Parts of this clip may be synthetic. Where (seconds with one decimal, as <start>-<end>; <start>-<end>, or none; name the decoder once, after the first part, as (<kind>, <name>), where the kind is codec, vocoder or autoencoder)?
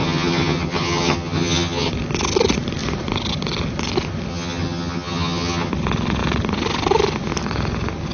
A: 0.0-1.9 (vocoder, HiFi-GAN); 4.3-5.7